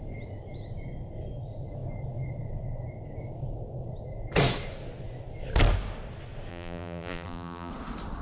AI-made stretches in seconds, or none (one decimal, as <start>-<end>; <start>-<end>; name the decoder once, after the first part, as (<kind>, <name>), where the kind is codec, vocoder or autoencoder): 6.5-7.7 (vocoder, BigVGAN v2)